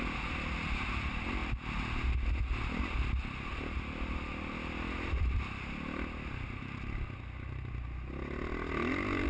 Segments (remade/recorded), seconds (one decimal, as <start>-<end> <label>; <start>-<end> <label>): 0.0-9.3 recorded